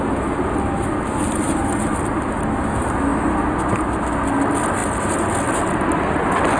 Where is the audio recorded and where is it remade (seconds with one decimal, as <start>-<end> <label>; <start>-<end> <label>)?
0.0-6.6 recorded